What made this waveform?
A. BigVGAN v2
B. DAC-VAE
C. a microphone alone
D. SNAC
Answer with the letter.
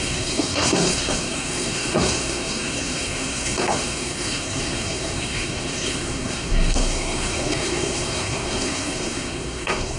D